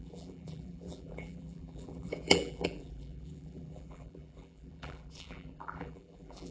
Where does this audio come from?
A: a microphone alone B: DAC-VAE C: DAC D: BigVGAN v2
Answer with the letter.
D